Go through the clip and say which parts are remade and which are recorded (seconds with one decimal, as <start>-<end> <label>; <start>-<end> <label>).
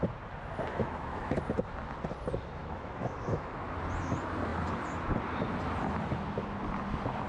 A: 0.0-0.7 recorded; 0.7-1.4 remade; 1.4-2.6 recorded; 2.6-3.8 remade; 3.8-7.3 recorded